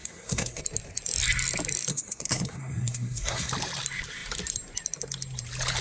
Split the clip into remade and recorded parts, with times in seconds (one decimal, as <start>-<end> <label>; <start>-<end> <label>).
0.0-0.6 remade; 0.6-1.9 recorded; 1.9-3.5 remade; 3.5-5.8 recorded